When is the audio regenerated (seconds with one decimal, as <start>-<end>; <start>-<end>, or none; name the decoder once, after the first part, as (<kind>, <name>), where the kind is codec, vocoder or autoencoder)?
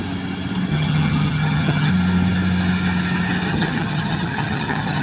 0.7-1.9 (vocoder, HiFi-GAN); 3.5-5.0